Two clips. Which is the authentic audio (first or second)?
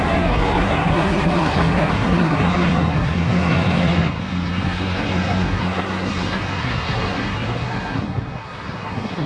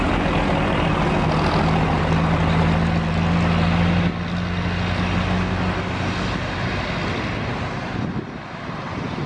second